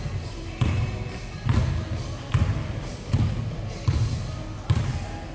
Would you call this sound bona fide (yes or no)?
yes